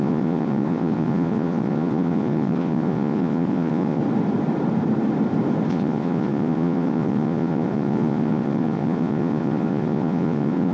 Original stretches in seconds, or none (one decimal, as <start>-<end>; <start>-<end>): 4.0-5.7

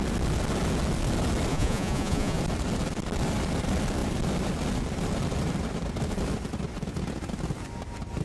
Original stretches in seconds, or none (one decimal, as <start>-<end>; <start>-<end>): 0.0-1.5; 2.4-8.2

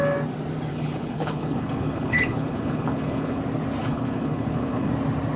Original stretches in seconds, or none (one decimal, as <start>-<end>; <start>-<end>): 0.0-0.7; 3.4-3.8; 4.9-5.4

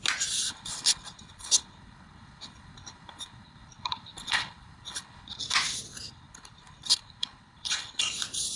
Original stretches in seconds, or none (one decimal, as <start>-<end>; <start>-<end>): 0.0-0.5; 5.4-6.1; 8.0-8.6

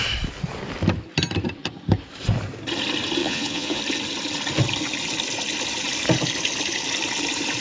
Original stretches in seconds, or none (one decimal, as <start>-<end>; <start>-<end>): 0.0-3.2; 3.8-7.6

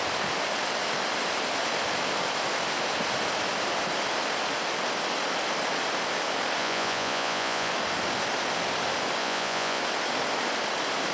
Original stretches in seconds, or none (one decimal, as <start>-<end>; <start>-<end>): 0.0-6.6; 7.7-9.2; 9.8-11.1

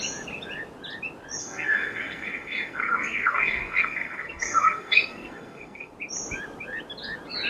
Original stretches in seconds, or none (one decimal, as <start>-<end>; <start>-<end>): 0.0-1.4; 5.9-7.5

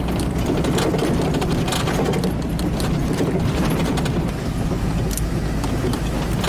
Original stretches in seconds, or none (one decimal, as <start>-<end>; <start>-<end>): 0.0-3.0; 3.6-6.5